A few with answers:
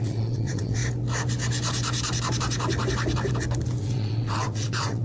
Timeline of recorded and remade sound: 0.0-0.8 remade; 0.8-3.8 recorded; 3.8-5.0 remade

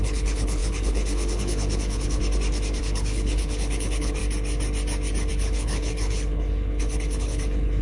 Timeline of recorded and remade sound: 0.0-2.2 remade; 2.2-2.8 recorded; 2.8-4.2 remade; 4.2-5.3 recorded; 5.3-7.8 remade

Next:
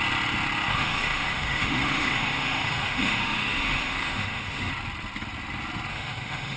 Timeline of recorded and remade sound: 0.0-0.7 recorded; 0.7-4.7 remade; 4.7-5.9 recorded; 5.9-6.6 remade

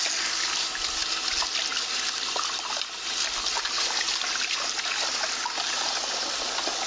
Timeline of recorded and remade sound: 0.0-6.9 recorded

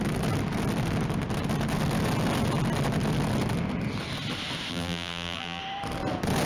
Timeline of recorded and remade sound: 0.0-4.7 recorded; 4.7-5.6 remade; 5.6-6.5 recorded

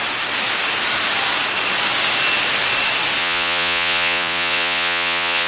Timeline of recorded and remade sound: 0.0-3.2 recorded; 3.2-5.5 remade